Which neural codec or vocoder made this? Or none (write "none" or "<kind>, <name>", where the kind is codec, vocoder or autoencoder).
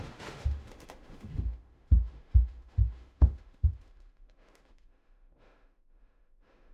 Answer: autoencoder, DAC-VAE